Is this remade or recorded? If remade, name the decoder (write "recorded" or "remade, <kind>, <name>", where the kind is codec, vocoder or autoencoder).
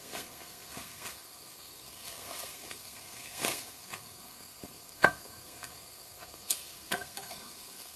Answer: remade, codec, SNAC